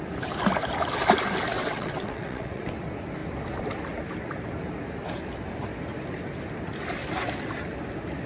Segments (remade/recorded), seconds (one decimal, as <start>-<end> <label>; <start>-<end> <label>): 0.0-1.6 recorded; 1.6-2.7 remade; 2.7-8.3 recorded